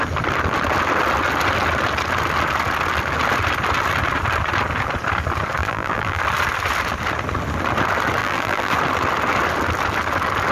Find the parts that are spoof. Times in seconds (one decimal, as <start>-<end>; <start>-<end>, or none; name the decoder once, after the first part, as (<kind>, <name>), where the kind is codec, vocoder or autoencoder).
5.6-6.2 (vocoder, BigVGAN v2); 8.2-8.7